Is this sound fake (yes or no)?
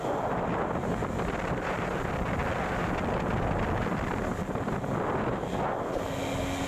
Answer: no